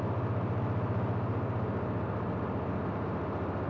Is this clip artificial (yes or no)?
no